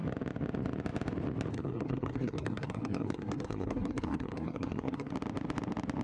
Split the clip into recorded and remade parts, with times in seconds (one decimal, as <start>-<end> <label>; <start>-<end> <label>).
0.0-1.5 recorded; 1.5-5.1 remade; 5.1-6.0 recorded

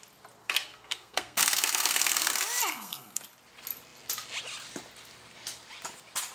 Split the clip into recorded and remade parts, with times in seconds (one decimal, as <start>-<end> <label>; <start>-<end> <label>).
0.0-0.4 recorded; 0.4-2.3 remade; 2.3-2.7 recorded; 2.7-3.2 remade; 3.2-6.3 recorded

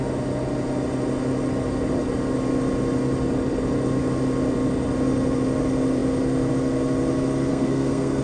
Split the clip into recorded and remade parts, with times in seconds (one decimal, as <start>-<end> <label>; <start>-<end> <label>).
0.0-7.5 recorded; 7.5-8.2 remade

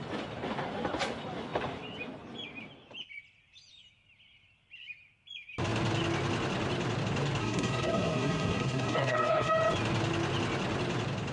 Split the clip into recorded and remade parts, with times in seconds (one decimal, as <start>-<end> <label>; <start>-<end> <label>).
0.0-7.4 recorded; 7.4-9.5 remade; 9.5-11.3 recorded

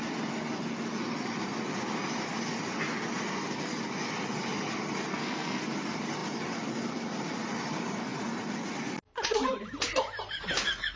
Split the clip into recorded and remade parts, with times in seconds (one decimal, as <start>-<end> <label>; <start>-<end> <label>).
0.0-5.1 recorded; 5.1-5.6 remade; 5.6-11.0 recorded